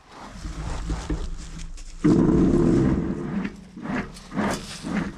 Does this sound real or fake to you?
real